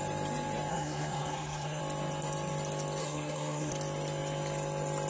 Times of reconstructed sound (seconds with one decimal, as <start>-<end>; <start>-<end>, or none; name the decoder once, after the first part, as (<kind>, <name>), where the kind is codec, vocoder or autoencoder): 0.7-1.8 (codec, SNAC); 3.0-3.7